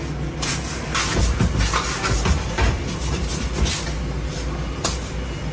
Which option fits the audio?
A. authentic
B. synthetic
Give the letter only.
A